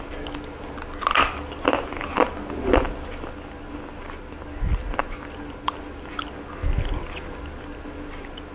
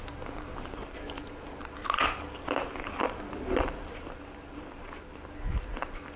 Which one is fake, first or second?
second